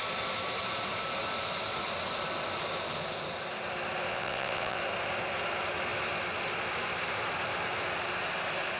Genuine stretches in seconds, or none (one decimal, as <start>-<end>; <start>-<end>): 0.0-4.1; 4.8-8.8